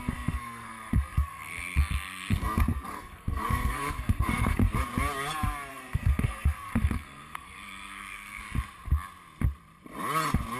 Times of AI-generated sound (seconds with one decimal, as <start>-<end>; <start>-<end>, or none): 0.0-4.6; 5.7-8.4